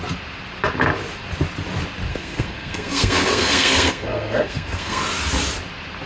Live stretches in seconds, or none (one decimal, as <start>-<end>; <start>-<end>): 0.0-2.1; 5.0-6.1

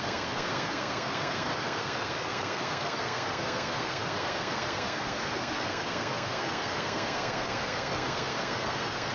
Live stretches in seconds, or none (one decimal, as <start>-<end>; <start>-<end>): none

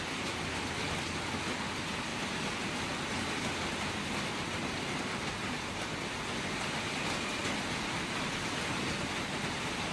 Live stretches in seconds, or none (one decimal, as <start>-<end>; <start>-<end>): 0.0-9.9